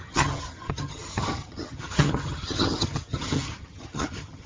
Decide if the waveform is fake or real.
fake